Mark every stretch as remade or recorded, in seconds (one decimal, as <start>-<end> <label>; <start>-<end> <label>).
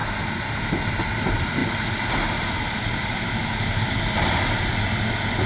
0.0-5.5 recorded